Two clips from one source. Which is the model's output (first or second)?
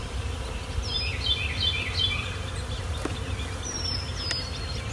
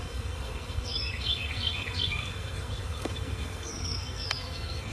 second